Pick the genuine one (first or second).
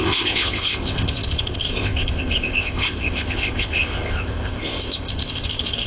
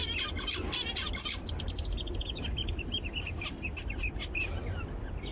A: second